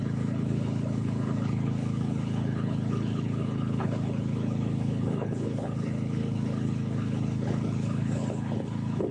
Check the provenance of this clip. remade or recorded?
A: remade